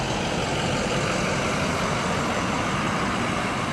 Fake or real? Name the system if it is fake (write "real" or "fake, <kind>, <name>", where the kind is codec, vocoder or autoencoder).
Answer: real